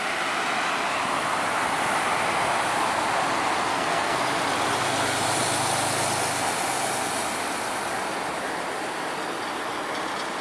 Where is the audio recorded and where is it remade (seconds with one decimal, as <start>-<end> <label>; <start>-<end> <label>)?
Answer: 0.0-3.7 recorded; 3.7-4.2 remade; 4.2-10.4 recorded